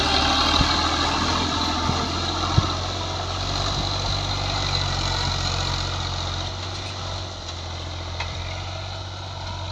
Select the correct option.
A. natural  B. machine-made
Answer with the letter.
A